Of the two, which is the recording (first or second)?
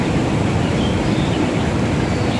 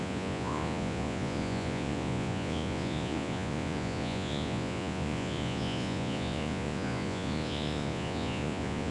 first